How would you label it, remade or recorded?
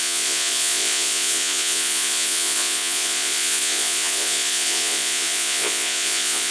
remade